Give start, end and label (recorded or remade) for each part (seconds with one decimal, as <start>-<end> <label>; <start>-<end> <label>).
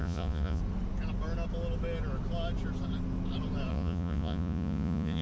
0.0-0.6 remade; 0.6-3.7 recorded; 3.7-5.2 remade